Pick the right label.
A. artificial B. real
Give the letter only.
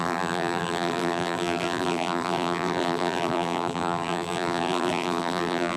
A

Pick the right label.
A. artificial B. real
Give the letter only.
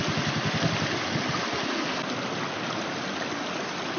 B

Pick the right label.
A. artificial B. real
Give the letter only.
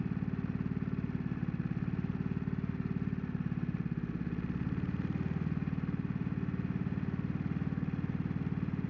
B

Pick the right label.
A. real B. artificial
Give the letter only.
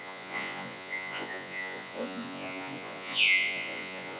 B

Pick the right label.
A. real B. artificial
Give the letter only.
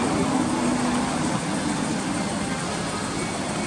A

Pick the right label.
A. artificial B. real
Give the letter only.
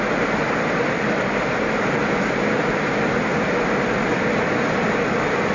B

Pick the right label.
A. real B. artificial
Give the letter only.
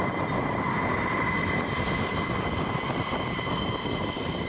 A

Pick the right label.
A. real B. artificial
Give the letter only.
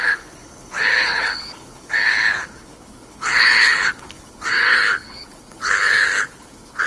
B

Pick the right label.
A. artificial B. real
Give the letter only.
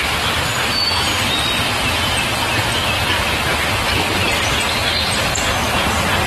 B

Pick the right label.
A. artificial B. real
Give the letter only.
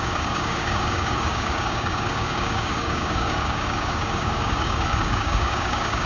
A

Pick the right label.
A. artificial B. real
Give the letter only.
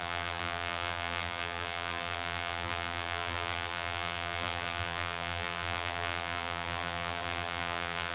A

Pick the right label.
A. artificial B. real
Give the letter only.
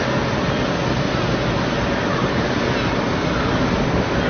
B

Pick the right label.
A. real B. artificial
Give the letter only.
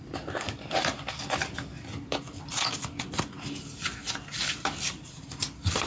B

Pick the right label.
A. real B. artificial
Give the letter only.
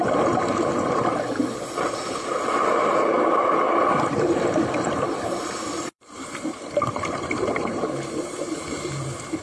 B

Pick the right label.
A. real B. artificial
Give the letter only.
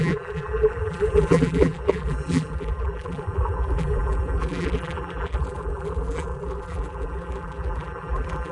B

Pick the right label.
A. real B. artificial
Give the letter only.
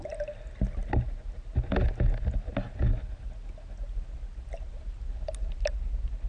A